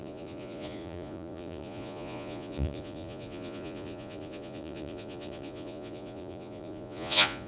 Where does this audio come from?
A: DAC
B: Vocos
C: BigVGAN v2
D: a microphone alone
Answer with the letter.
B